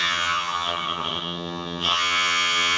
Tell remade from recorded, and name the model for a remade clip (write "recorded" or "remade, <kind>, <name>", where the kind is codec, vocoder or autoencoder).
remade, vocoder, HiFi-GAN